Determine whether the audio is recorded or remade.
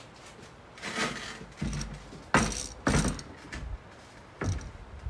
recorded